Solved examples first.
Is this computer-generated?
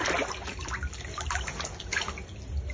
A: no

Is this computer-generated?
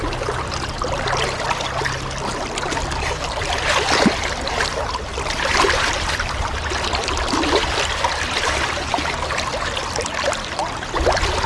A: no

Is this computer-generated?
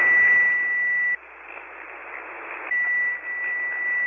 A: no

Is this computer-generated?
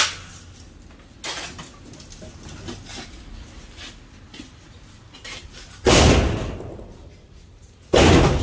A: no